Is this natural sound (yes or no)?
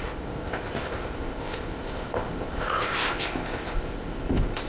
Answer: no